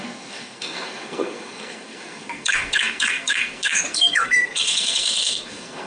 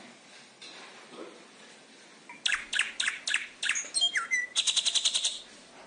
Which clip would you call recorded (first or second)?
second